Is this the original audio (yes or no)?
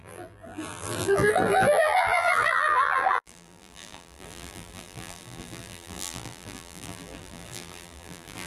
no